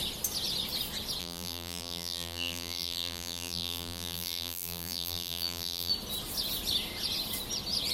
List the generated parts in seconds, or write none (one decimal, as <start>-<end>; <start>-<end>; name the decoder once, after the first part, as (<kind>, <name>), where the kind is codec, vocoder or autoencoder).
1.2-5.9 (vocoder, BigVGAN v2)